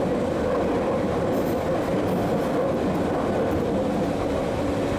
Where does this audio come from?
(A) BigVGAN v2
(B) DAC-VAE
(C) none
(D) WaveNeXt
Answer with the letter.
C